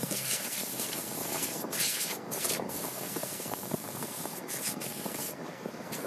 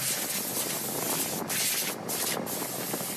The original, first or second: second